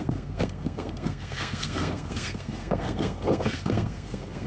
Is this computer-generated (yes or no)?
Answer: yes